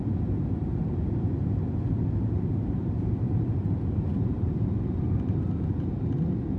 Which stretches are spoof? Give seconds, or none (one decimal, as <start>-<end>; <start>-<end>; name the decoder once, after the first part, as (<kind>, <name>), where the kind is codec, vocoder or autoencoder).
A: 0.8-1.4 (vocoder, BigVGAN v2); 2.0-6.0